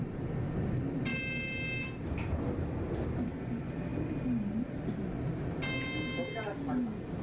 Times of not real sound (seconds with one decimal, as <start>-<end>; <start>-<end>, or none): none